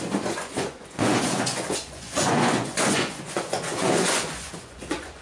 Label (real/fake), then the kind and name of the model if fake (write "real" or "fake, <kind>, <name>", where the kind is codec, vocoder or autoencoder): fake, vocoder, Vocos